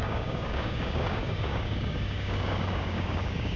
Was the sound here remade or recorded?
remade